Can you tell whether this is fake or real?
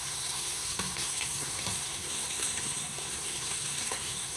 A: fake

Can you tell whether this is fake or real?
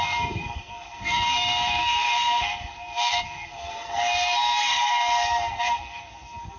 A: fake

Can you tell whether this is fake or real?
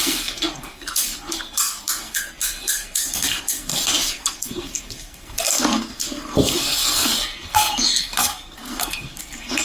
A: fake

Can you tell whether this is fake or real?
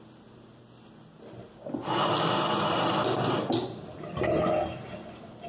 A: real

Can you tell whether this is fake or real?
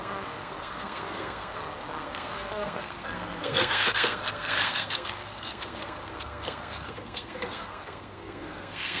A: fake